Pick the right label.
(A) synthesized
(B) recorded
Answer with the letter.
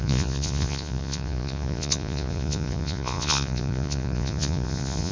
A